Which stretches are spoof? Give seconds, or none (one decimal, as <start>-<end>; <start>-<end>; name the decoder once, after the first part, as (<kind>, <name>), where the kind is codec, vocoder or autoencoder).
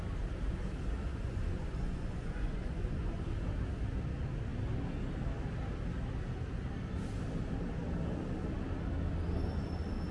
1.1-3.2 (vocoder, Vocos)